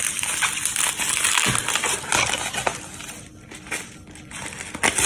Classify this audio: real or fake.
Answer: real